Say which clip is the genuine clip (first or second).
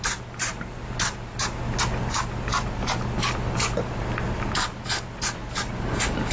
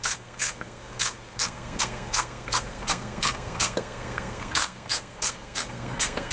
first